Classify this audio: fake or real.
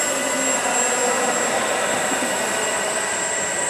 real